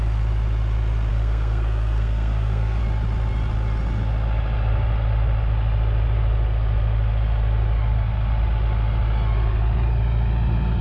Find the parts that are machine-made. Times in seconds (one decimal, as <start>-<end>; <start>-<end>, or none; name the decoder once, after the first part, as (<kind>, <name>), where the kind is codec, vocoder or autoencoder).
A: 1.1-2.8 (codec, SNAC)

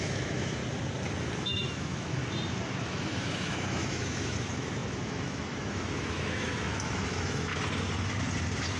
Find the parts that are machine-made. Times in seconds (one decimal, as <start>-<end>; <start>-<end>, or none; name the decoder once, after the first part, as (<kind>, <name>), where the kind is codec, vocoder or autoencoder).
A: 0.0-0.6 (autoencoder, DAC-VAE); 1.4-2.2; 2.8-7.5

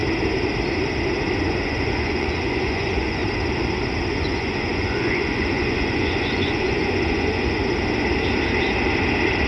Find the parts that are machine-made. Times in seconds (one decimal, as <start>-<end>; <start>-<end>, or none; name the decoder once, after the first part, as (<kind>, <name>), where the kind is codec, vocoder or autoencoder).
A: 1.4-3.2 (vocoder, Vocos); 4.1-7.6

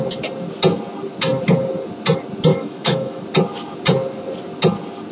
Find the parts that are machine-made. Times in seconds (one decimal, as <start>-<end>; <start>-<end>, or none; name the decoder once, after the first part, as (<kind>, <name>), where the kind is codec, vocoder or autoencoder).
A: 2.5-3.2 (autoencoder, DAC-VAE)

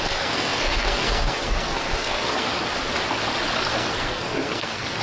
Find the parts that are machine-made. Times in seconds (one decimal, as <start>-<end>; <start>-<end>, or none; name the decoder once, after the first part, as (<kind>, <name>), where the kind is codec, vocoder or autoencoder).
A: 0.0-2.5 (codec, SNAC); 3.7-5.0

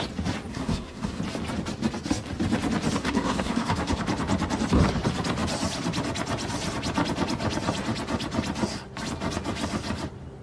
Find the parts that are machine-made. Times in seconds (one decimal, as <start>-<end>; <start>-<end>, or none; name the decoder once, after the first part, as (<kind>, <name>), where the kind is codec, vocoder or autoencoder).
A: 0.5-1.2 (codec, SNAC); 3.0-4.0

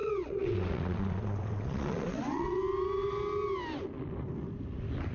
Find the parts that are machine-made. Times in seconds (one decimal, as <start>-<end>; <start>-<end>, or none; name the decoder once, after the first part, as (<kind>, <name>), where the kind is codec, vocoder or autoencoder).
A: 0.0-2.6 (vocoder, WaveNeXt)

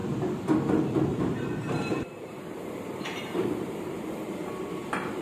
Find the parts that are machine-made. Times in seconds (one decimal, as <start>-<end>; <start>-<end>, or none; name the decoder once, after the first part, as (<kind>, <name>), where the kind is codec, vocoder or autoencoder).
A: 1.1-3.7 (vocoder, BigVGAN v2)